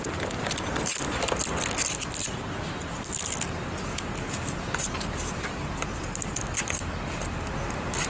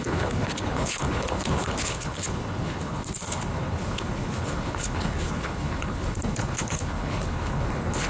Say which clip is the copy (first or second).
second